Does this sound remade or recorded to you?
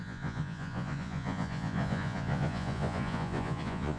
remade